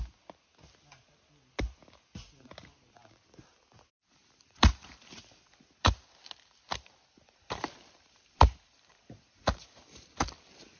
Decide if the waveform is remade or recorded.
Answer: recorded